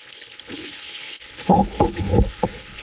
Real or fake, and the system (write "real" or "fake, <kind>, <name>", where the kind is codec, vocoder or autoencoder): fake, codec, HILCodec